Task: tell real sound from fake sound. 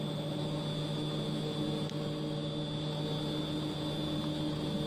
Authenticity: real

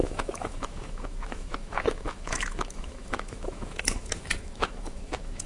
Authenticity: fake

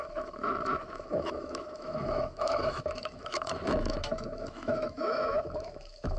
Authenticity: fake